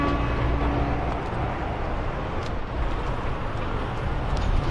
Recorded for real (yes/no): yes